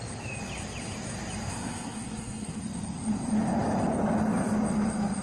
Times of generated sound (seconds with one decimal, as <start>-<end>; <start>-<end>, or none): 1.5-2.6